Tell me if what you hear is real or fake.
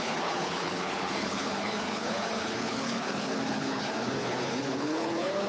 fake